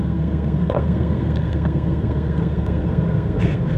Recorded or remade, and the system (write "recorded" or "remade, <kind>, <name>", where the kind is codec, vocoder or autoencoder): remade, codec, SNAC